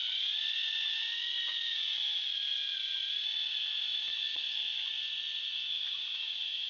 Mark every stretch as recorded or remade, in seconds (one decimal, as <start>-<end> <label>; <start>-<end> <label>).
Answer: 0.0-3.0 remade; 3.0-4.1 recorded; 4.1-4.9 remade; 4.9-6.7 recorded

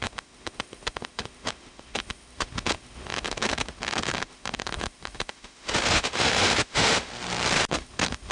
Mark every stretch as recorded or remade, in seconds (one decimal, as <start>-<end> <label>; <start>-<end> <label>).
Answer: 0.0-7.1 remade; 7.1-7.7 recorded; 7.7-8.3 remade

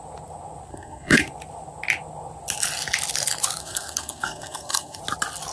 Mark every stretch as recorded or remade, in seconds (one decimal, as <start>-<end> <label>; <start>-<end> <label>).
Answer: 0.0-0.7 recorded; 0.7-1.2 remade; 1.2-3.6 recorded; 3.6-5.0 remade; 5.0-5.5 recorded

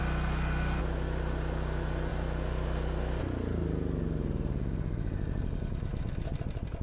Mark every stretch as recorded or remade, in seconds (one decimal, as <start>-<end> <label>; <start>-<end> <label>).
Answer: 0.0-6.8 recorded

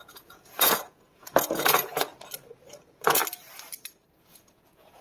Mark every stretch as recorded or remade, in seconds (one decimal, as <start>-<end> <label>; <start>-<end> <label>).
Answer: 0.0-2.1 remade; 2.1-2.7 recorded; 2.7-3.2 remade; 3.2-4.1 recorded; 4.1-5.0 remade